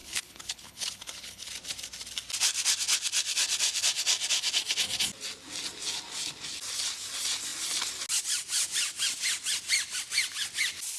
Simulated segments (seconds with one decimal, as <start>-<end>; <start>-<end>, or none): 0.0-1.5